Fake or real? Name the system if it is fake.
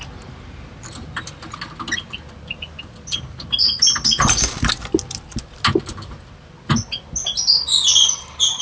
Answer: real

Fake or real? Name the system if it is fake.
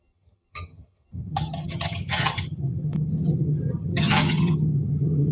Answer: fake, vocoder, HiFi-GAN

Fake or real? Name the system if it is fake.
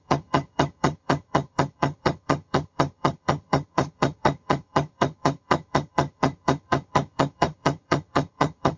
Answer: fake, vocoder, HiFi-GAN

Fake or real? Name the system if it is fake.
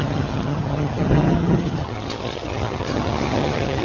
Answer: fake, vocoder, HiFi-GAN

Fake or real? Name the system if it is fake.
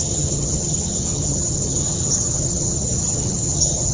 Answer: fake, vocoder, HiFi-GAN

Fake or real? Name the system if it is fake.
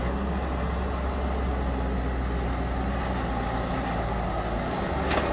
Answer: real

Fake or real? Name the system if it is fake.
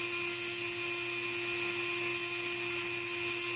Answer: real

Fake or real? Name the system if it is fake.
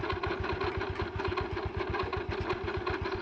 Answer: real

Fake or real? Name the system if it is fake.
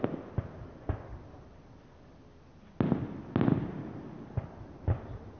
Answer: real